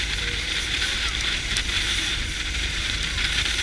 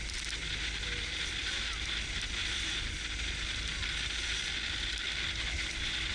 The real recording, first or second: second